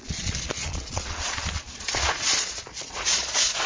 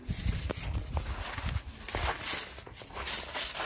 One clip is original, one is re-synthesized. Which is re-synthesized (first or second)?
first